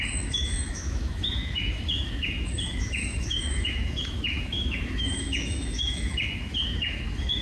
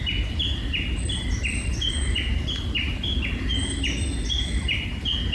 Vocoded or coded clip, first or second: first